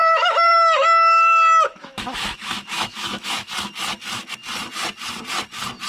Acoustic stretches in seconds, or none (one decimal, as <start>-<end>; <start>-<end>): 3.5-5.9